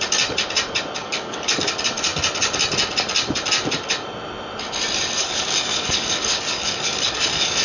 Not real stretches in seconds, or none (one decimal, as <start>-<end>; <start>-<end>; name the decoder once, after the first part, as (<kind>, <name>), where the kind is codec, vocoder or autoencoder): 1.0-1.7 (codec, DAC); 5.2-7.6